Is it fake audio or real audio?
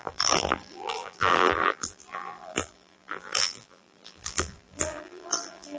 fake